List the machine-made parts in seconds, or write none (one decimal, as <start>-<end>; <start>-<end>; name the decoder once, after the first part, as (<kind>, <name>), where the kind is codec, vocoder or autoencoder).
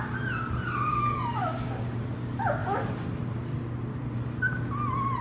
0.9-2.0 (codec, DAC)